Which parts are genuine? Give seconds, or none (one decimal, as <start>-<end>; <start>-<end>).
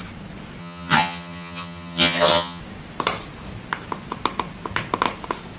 0.0-0.6; 2.6-5.6